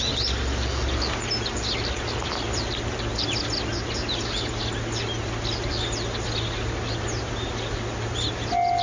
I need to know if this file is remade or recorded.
recorded